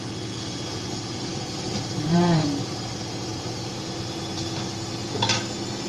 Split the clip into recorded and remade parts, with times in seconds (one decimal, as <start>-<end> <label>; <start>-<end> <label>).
0.0-1.3 recorded; 1.3-2.9 remade; 2.9-3.3 recorded; 3.3-4.0 remade; 4.0-5.9 recorded